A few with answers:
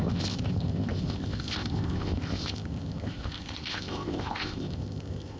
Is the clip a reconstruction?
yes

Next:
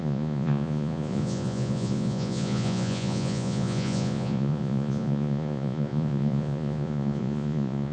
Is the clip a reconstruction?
yes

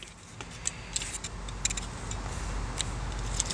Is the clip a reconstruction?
no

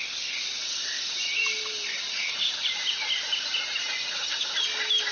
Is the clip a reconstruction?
no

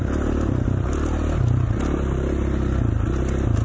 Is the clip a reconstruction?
no